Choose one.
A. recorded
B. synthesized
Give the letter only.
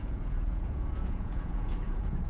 B